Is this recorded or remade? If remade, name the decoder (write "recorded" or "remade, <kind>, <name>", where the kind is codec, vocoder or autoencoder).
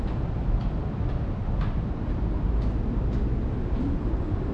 recorded